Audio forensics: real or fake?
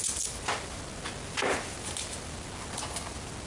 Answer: real